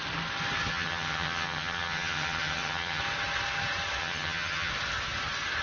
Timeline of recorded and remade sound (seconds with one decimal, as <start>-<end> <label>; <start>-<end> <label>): 0.0-0.7 recorded; 0.7-3.0 remade; 3.0-4.0 recorded; 4.0-4.7 remade; 4.7-5.6 recorded